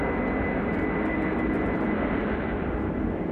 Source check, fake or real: real